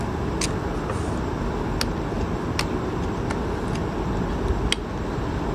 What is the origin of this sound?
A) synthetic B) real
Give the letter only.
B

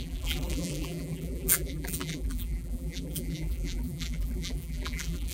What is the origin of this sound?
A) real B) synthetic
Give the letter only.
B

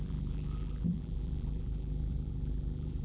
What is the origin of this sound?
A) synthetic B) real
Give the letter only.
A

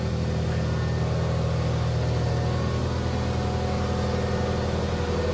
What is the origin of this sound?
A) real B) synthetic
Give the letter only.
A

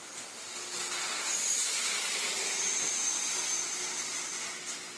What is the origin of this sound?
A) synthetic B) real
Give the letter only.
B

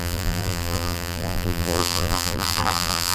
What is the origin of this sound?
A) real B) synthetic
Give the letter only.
B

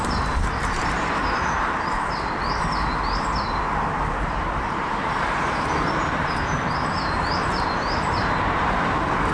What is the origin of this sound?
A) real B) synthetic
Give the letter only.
B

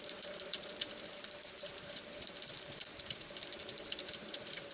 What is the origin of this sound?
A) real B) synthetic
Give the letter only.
B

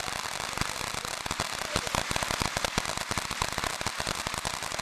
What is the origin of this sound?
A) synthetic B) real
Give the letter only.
B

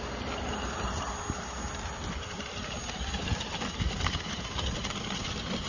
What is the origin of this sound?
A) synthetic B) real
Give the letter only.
B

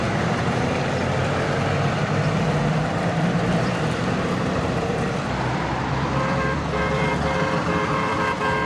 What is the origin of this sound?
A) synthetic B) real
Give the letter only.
A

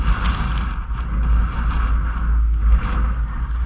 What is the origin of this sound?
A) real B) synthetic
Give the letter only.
A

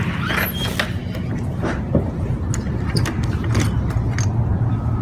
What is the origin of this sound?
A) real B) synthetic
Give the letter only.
A